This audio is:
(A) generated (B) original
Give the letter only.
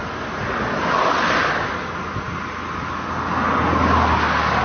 B